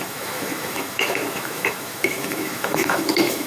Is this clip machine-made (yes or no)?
yes